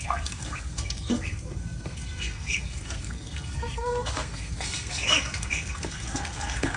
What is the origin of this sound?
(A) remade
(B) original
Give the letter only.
A